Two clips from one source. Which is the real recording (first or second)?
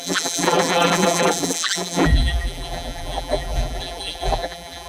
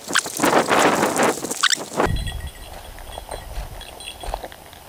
second